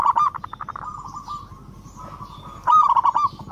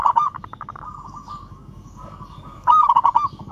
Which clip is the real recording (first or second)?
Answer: first